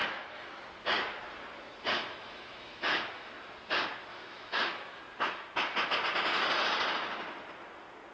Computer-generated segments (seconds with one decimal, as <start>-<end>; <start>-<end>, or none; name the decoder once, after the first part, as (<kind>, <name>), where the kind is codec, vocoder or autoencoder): 0.0-0.6 (autoencoder, DAC-VAE); 2.0-3.3; 4.1-5.0